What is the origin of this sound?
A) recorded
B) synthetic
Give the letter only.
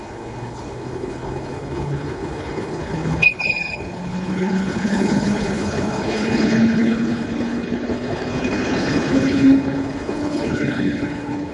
B